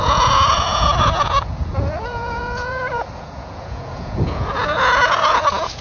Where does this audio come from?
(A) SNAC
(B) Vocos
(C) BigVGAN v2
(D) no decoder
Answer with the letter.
B